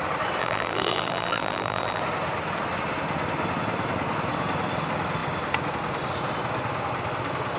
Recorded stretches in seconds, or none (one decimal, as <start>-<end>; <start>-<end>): 0.0-0.4; 2.0-7.6

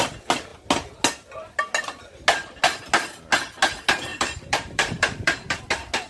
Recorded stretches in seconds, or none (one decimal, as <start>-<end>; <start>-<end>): 0.0-4.1; 5.6-6.1

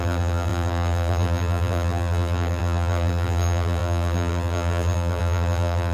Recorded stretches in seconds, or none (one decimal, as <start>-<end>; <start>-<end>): none

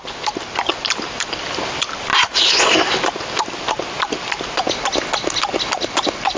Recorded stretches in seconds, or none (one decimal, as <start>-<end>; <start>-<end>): 2.1-5.9

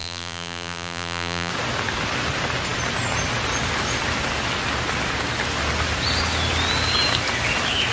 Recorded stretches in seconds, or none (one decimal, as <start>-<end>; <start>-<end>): 1.5-7.9

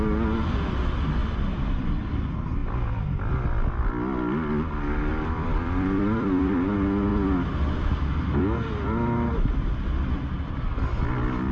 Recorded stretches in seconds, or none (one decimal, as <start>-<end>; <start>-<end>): 0.0-1.2; 1.9-5.1; 6.5-11.5

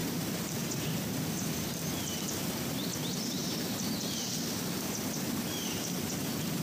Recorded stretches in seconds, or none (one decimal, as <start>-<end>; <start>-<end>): 0.6-3.4; 4.4-6.6